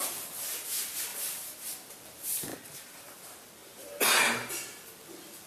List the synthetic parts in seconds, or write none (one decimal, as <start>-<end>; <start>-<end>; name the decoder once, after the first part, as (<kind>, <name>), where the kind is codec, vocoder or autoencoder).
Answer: 1.1-2.0 (vocoder, BigVGAN v2); 2.5-3.1; 3.6-4.5